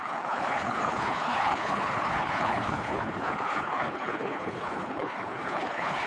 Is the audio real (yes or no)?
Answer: no